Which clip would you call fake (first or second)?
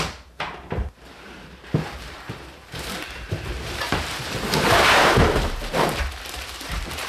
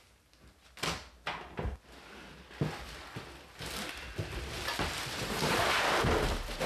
first